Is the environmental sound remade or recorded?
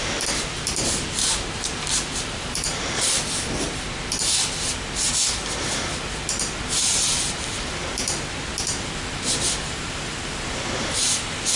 recorded